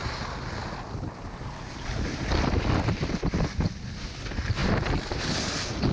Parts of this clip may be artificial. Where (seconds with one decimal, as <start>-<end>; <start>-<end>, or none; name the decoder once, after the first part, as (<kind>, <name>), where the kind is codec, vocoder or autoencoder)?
none